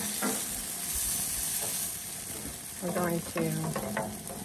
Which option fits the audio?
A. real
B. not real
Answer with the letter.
A